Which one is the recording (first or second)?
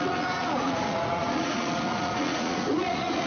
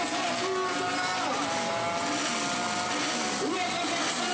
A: second